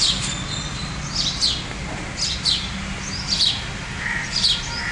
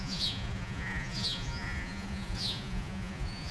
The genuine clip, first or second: first